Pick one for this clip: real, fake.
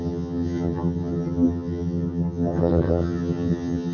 fake